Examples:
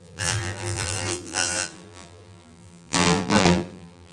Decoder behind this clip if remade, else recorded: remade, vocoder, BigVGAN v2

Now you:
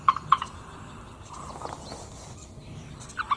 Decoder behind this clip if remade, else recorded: recorded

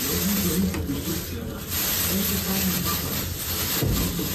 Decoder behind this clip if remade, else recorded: recorded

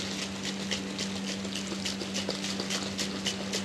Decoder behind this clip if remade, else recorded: recorded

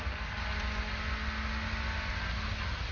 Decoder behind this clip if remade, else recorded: recorded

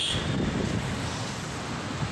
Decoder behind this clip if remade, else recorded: recorded